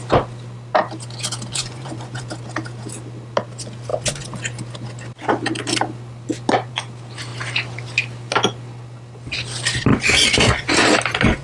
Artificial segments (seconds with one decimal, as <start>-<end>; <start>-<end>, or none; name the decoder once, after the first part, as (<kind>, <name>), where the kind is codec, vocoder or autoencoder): 1.6-2.2 (vocoder, Vocos)